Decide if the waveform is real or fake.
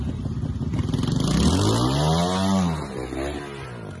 real